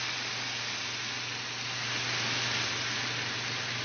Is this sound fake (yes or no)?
no